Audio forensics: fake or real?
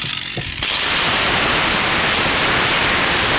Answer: real